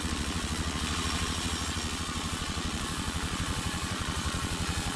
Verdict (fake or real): fake